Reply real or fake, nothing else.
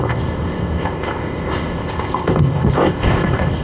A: fake